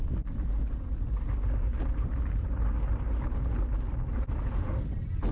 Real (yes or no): yes